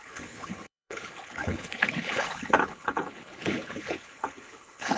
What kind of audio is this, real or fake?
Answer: fake